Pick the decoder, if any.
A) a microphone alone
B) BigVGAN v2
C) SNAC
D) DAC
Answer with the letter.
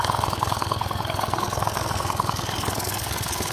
C